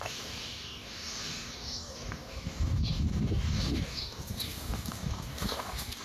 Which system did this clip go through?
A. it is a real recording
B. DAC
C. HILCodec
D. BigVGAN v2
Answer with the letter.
B